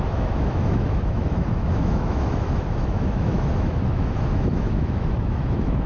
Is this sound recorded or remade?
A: remade